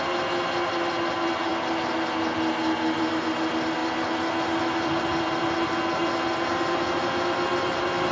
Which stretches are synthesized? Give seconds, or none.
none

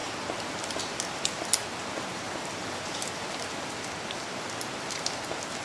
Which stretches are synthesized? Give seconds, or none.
none

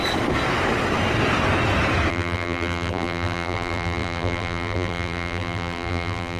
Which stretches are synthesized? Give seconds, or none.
2.1-6.4 (vocoder, BigVGAN v2)

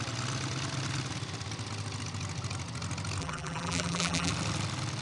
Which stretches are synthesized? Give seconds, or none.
3.2-4.3 (vocoder, BigVGAN v2)

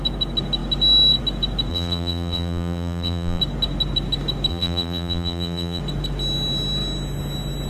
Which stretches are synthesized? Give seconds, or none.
1.7-3.4 (vocoder, BigVGAN v2); 4.5-5.8